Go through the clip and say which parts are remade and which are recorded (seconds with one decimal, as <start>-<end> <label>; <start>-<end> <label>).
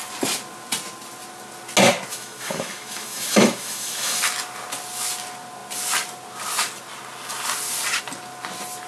0.0-2.1 recorded; 2.1-4.2 remade; 4.2-8.9 recorded